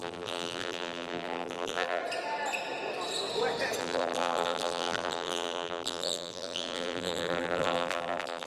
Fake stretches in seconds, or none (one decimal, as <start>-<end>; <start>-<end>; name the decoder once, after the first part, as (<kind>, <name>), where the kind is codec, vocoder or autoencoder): 0.0-2.0 (vocoder, BigVGAN v2); 3.8-8.5

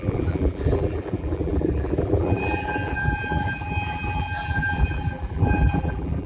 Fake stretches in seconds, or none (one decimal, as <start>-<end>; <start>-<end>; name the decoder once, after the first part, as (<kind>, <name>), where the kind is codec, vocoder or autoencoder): 0.0-6.3 (vocoder, BigVGAN v2)

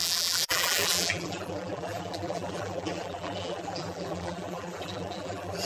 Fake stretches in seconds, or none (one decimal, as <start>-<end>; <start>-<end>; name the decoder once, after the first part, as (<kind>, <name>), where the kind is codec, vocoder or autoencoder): 0.0-5.7 (vocoder, BigVGAN v2)